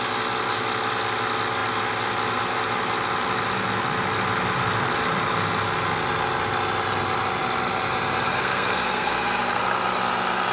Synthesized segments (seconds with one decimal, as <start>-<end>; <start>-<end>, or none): 8.3-9.6

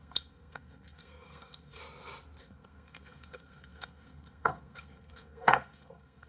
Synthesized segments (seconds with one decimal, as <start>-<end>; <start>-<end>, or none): 0.0-1.8; 2.4-6.3